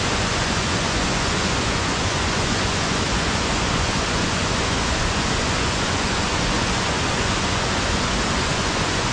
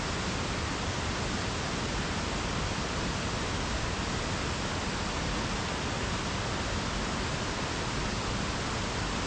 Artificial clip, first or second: first